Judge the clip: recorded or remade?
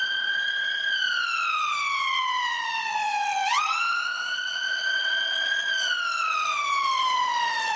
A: remade